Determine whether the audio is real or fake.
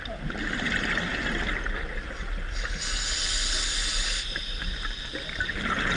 real